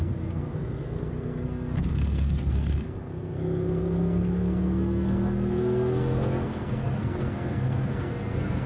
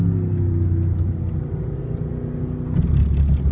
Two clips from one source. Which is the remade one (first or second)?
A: first